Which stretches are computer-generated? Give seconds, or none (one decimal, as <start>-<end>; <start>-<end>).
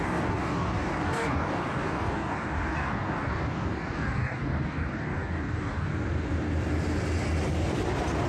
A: 0.0-5.9